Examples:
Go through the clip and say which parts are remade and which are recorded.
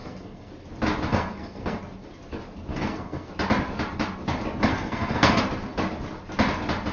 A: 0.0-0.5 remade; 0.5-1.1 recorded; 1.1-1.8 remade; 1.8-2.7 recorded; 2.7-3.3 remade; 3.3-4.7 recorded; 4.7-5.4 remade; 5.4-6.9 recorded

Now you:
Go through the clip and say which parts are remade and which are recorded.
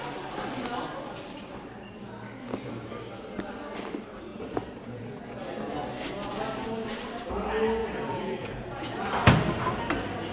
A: 0.0-4.3 recorded; 4.3-5.4 remade; 5.4-7.8 recorded; 7.8-9.0 remade; 9.0-10.3 recorded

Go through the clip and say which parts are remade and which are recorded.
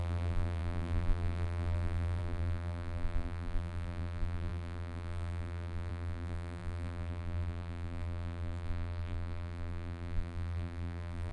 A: 0.0-11.3 remade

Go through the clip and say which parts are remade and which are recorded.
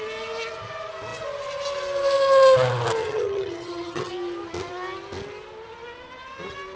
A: 0.0-3.0 recorded; 3.0-4.1 remade; 4.1-6.8 recorded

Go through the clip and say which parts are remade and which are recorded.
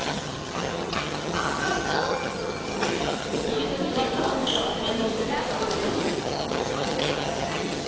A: 0.0-3.5 remade; 3.5-6.0 recorded; 6.0-7.9 remade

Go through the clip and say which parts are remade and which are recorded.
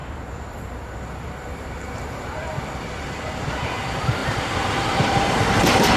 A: 0.0-3.6 remade; 3.6-4.2 recorded; 4.2-6.0 remade